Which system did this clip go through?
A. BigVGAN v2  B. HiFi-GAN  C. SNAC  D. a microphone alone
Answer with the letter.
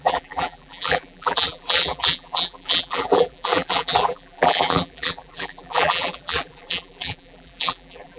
A